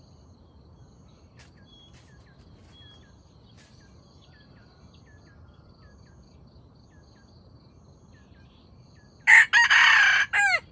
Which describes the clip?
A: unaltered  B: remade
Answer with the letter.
A